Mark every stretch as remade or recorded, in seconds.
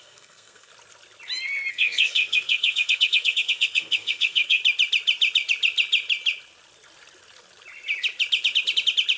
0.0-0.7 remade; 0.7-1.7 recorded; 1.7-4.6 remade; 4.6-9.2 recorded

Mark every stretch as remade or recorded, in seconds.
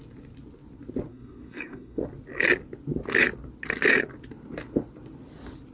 0.0-1.1 recorded; 1.1-2.0 remade; 2.0-5.7 recorded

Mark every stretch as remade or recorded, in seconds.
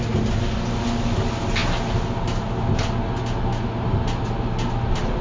0.0-5.2 recorded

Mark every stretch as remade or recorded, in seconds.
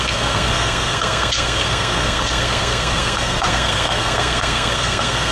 0.0-5.3 remade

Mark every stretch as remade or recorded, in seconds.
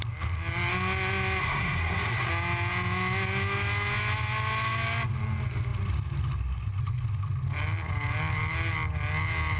0.0-1.4 recorded; 1.4-2.3 remade; 2.3-9.6 recorded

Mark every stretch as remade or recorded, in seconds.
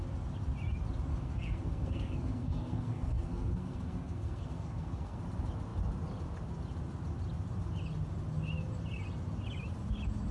0.0-1.1 recorded; 1.1-5.2 remade; 5.2-10.3 recorded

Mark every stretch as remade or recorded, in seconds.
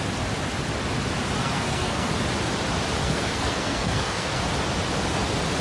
0.0-1.4 recorded; 1.4-2.1 remade; 2.1-3.0 recorded; 3.0-4.4 remade; 4.4-5.6 recorded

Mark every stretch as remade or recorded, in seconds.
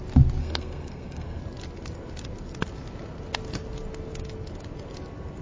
0.0-0.4 recorded; 0.4-1.4 remade; 1.4-5.4 recorded